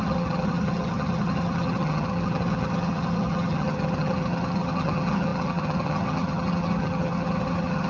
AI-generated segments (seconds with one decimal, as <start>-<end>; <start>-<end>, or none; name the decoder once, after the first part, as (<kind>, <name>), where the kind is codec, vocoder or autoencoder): 0.0-7.9 (vocoder, HiFi-GAN)